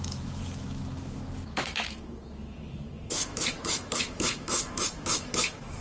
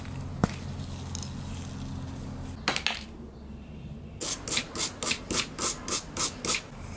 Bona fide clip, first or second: second